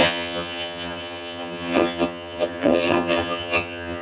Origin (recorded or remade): remade